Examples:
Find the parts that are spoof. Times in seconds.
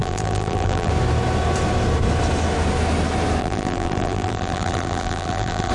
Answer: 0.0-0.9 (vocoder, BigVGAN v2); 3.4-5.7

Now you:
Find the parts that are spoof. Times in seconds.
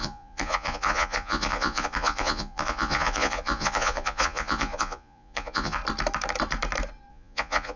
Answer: 0.0-5.8 (vocoder, Vocos); 7.1-7.8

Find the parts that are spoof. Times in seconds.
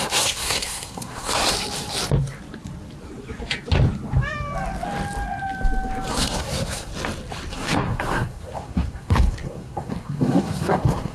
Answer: 0.0-1.4 (codec, SNAC); 6.1-6.9; 7.5-11.1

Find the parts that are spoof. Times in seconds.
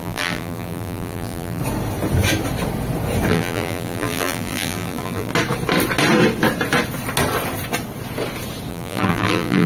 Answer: 0.0-1.6 (vocoder, BigVGAN v2); 3.3-5.3; 8.7-9.7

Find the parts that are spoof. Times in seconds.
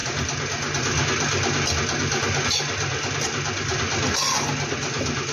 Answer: none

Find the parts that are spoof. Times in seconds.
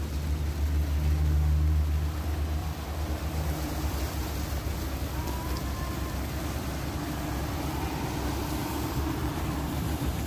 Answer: 2.6-3.9 (vocoder, BigVGAN v2); 8.6-10.3